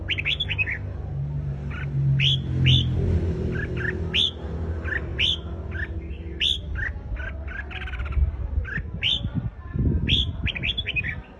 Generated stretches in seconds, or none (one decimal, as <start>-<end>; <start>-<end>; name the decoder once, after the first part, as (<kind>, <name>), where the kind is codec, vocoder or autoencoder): none